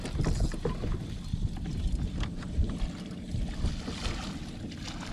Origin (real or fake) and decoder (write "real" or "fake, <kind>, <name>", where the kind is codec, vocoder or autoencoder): real